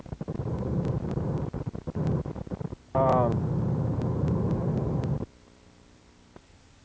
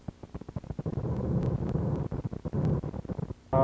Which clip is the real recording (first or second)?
second